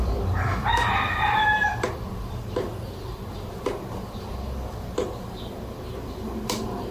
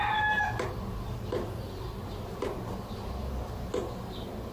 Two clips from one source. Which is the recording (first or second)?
second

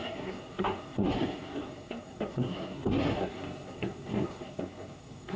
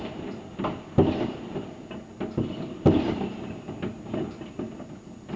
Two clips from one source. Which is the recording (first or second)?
second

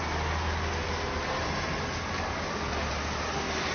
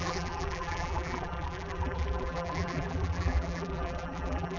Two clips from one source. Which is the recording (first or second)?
first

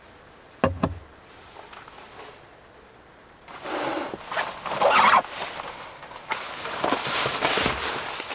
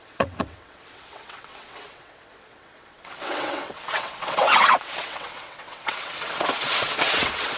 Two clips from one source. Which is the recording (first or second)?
first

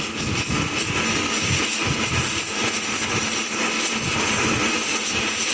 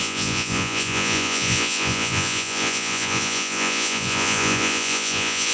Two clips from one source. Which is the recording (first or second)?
first